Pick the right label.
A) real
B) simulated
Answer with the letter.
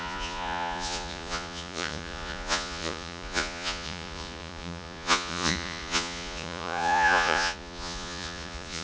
B